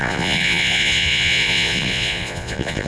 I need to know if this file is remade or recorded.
remade